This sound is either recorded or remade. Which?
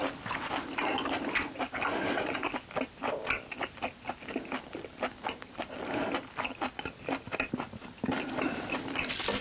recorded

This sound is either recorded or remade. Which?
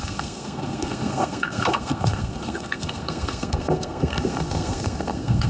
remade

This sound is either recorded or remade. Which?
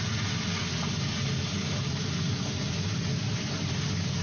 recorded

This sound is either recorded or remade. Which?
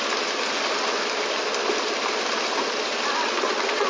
recorded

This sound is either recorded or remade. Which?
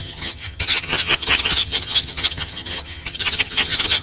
remade